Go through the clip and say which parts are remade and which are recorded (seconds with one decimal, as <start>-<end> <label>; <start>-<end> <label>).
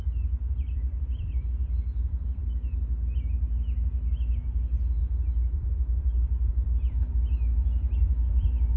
0.0-0.5 recorded; 0.5-2.4 remade; 2.4-5.0 recorded; 5.0-7.1 remade; 7.1-8.8 recorded